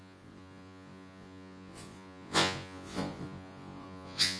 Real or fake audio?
fake